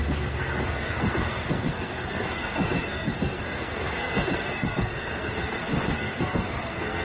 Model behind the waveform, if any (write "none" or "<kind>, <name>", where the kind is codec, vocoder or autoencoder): codec, SNAC